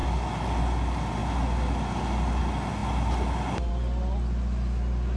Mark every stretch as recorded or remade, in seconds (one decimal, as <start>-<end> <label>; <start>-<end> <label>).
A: 0.0-5.2 recorded

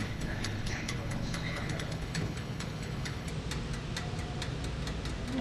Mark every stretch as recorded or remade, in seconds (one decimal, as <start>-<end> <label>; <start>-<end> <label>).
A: 0.0-3.3 remade; 3.3-5.4 recorded

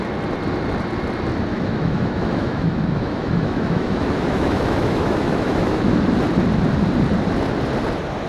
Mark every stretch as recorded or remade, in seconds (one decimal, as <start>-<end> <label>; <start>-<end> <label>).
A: 0.0-1.5 recorded; 1.5-5.9 remade; 5.9-8.3 recorded

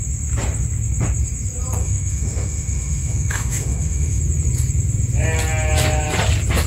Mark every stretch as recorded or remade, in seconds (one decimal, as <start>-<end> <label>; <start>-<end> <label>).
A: 0.0-1.8 recorded; 1.8-4.2 remade; 4.2-6.7 recorded